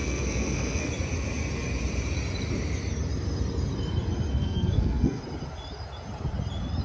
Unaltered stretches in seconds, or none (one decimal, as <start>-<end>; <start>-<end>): 0.9-4.3; 5.2-6.8